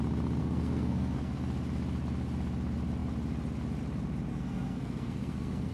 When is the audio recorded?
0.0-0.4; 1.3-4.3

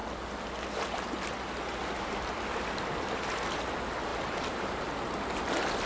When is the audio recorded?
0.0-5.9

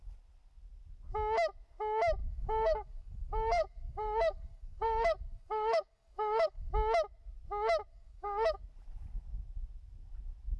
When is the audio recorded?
0.0-2.2; 6.7-7.9; 8.6-10.6

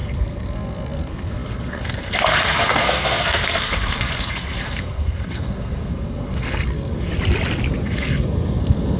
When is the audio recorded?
7.1-7.8